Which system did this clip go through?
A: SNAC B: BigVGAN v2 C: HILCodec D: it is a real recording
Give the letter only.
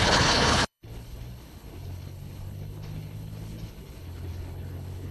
C